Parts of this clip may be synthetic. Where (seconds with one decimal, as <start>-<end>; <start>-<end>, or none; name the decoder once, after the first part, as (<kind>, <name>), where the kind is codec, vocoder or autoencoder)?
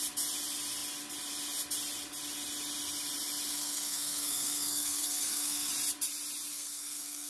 3.5-5.7 (codec, SNAC); 6.5-7.3